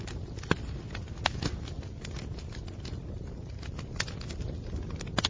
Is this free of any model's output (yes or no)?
yes